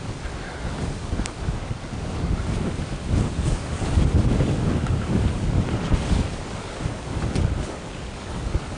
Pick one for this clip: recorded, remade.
remade